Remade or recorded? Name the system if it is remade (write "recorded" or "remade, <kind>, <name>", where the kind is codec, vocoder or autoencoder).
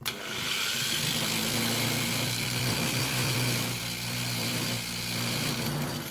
remade, vocoder, BigVGAN v2